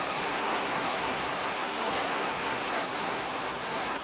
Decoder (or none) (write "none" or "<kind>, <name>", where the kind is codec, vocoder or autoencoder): codec, SNAC